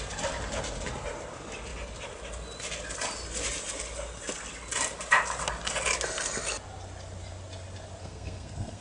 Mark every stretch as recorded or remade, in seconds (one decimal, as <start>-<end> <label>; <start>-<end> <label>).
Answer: 0.0-8.0 recorded; 8.0-8.8 remade